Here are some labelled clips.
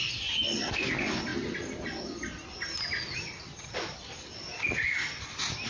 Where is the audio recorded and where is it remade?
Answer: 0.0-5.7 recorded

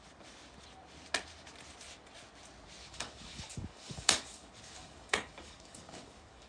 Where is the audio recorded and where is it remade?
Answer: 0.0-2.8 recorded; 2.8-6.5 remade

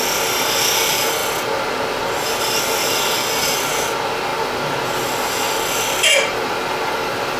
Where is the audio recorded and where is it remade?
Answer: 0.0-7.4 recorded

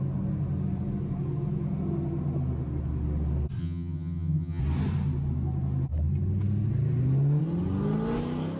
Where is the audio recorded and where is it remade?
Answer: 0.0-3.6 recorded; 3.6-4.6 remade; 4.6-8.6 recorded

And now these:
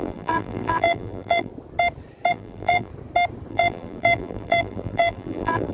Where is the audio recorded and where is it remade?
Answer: 0.0-1.5 remade; 1.5-2.3 recorded; 2.3-2.9 remade; 2.9-3.5 recorded; 3.5-5.7 remade

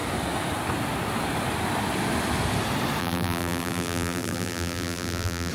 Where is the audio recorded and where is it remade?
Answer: 0.0-3.0 recorded; 3.0-5.5 remade